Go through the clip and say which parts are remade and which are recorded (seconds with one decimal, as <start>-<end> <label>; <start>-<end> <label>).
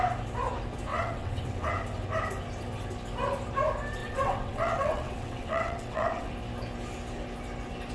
0.0-0.9 recorded; 0.9-1.7 remade; 1.7-4.0 recorded; 4.0-6.3 remade; 6.3-7.9 recorded